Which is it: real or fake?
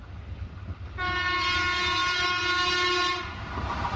real